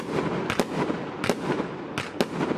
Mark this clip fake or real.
real